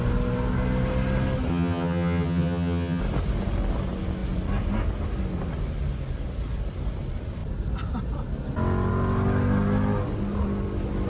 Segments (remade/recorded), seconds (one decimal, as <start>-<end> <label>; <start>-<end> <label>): 0.0-1.5 recorded; 1.5-3.0 remade; 3.0-11.1 recorded